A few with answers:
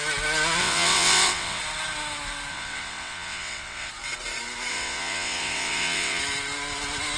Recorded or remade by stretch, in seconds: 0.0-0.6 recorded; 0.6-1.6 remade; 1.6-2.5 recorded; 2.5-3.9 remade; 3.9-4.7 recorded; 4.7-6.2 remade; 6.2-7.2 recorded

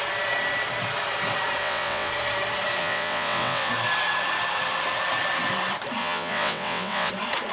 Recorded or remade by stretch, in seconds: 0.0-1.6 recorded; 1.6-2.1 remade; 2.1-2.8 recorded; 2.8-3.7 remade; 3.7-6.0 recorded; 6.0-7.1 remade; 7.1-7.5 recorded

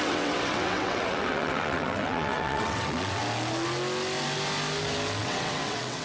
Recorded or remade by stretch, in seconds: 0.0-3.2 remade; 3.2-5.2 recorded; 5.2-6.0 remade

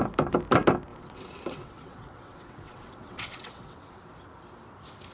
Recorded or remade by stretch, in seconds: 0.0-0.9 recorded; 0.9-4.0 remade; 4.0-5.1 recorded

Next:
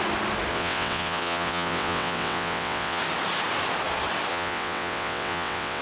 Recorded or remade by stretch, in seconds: 0.0-0.5 recorded; 0.5-3.0 remade; 3.0-4.3 recorded; 4.3-5.8 remade